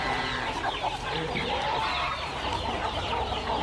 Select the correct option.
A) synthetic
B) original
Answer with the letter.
B